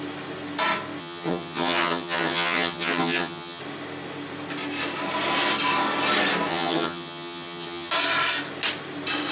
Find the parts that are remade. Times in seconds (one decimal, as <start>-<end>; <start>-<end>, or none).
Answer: 1.0-3.6; 6.5-7.9